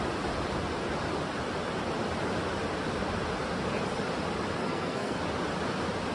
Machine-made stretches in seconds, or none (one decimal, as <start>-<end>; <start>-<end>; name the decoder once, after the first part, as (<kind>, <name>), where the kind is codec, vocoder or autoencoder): 4.6-5.2 (codec, SNAC)